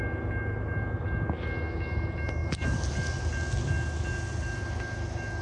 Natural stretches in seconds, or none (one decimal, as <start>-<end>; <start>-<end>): 0.0-5.4